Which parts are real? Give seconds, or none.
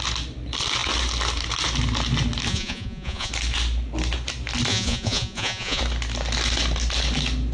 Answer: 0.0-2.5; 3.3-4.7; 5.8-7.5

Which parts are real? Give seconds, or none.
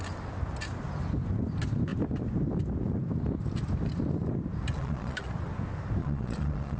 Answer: 0.0-4.7; 5.3-6.0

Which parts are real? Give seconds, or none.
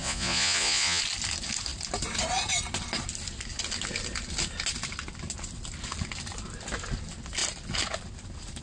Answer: 1.0-8.6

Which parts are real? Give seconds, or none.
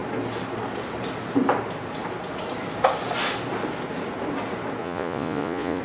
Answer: 0.0-4.8